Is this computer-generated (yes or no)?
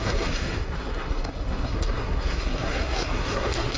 yes